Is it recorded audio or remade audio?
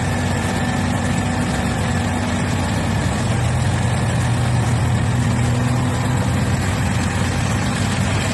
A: recorded